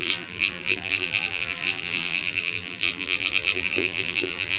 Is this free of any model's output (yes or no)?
no